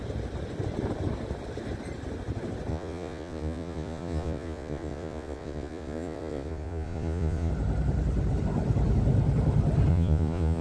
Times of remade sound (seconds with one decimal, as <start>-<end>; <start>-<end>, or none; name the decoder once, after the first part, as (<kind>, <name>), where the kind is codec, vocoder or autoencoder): 2.7-7.5 (vocoder, Vocos); 9.9-10.6